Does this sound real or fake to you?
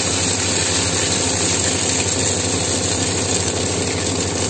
real